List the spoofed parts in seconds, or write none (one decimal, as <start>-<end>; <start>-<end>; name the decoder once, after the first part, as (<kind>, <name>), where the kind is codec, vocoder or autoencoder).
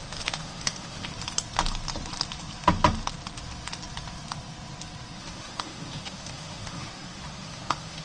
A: 0.0-1.1 (autoencoder, DAC-VAE); 5.2-8.0